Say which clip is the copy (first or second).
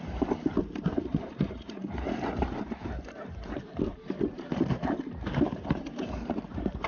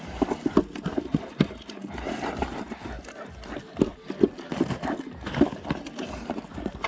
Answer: first